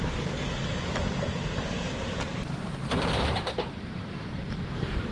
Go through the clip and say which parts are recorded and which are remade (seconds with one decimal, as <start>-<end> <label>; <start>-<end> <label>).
0.0-1.9 recorded; 1.9-5.1 remade